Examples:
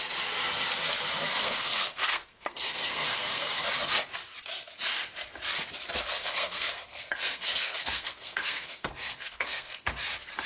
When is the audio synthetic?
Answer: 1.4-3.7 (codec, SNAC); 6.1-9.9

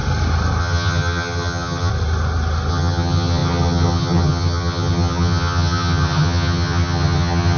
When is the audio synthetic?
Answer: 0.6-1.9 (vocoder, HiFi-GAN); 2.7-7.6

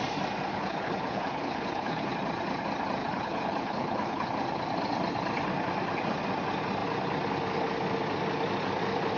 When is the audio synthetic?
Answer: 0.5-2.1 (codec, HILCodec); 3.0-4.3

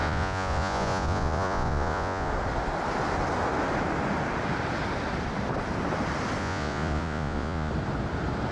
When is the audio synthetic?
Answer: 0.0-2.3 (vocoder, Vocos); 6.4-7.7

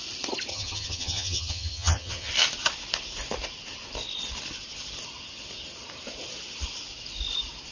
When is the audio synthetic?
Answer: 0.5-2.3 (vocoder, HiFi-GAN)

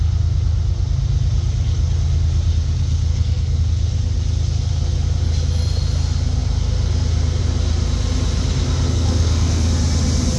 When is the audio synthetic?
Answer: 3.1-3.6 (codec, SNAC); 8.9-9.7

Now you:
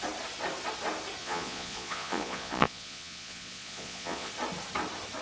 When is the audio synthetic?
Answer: 1.2-4.3 (vocoder, Vocos)